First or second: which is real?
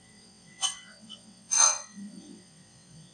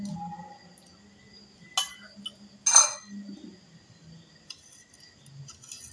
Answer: second